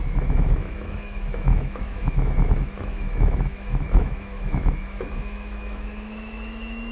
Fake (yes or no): yes